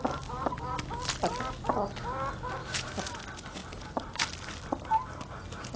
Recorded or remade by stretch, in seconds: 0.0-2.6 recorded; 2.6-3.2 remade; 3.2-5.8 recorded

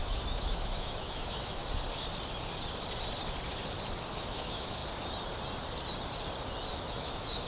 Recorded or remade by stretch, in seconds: 0.0-1.6 remade; 1.6-4.1 recorded; 4.1-4.8 remade; 4.8-6.7 recorded; 6.7-7.5 remade

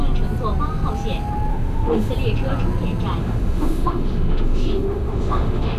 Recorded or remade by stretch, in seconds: 0.0-1.5 recorded; 1.5-2.1 remade; 2.1-3.2 recorded; 3.2-5.8 remade

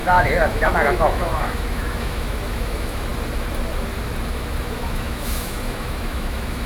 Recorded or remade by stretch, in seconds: 0.0-3.1 remade; 3.1-4.3 recorded; 4.3-6.7 remade